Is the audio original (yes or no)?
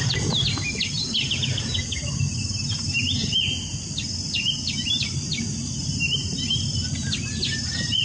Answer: yes